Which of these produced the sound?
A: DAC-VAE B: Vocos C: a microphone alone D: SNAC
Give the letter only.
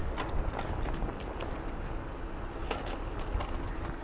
C